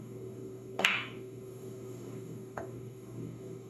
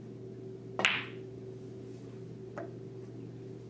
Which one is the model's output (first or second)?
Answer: first